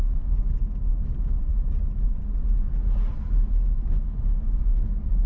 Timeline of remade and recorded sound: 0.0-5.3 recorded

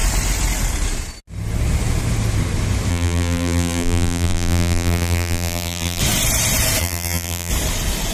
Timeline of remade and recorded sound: 0.0-2.9 recorded; 2.9-6.0 remade; 6.0-6.8 recorded; 6.8-7.5 remade; 7.5-8.1 recorded

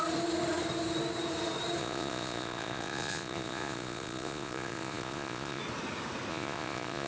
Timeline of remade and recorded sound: 0.0-1.8 recorded; 1.8-5.6 remade; 5.6-6.3 recorded; 6.3-7.1 remade

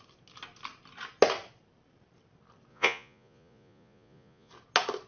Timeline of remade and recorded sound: 0.0-2.7 recorded; 2.7-4.5 remade; 4.5-5.1 recorded

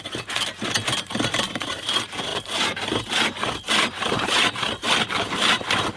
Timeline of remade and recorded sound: 0.0-6.0 recorded